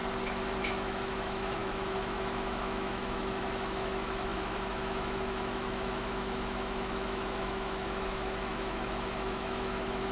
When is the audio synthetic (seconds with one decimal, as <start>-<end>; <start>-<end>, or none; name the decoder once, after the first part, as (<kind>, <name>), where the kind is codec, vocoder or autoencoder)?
0.6-10.1 (autoencoder, DAC-VAE)